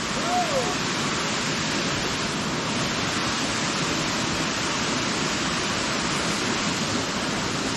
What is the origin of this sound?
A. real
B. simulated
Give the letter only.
A